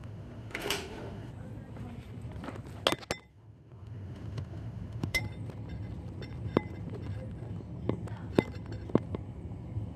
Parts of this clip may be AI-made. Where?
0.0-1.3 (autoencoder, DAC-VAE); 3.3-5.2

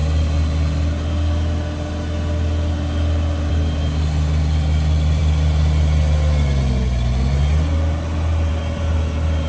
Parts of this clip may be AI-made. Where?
none

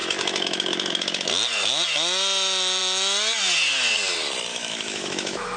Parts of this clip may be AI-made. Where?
0.0-1.3 (autoencoder, DAC-VAE); 4.5-5.6

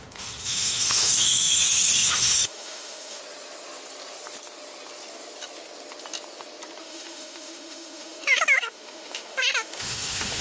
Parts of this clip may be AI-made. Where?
0.0-3.2 (autoencoder, DAC-VAE); 6.8-10.4

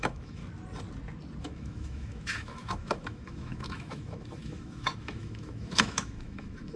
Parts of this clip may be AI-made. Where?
0.0-0.4 (autoencoder, DAC-VAE); 1.4-6.8

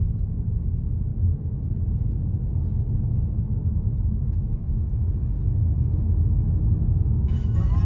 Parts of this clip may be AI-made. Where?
4.6-5.1 (autoencoder, DAC-VAE); 5.7-7.8

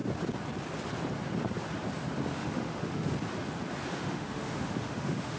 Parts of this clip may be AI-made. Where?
2.3-3.1 (autoencoder, DAC-VAE); 3.9-5.4

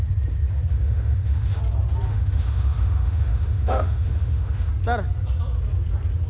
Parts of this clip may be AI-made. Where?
0.7-1.6 (autoencoder, DAC-VAE); 2.1-4.7